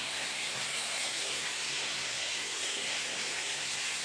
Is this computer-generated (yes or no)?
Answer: yes